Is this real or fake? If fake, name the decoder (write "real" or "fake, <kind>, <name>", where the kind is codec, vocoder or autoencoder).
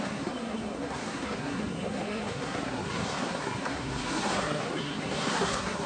fake, codec, SNAC